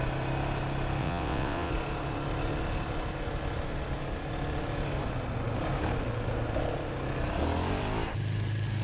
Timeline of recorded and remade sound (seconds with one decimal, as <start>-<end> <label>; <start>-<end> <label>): 0.0-1.0 recorded; 1.0-1.7 remade; 1.7-8.8 recorded